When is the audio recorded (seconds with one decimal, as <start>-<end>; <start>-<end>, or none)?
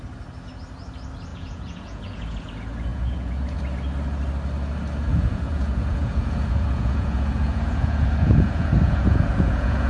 0.0-1.3; 2.5-2.9; 3.6-5.1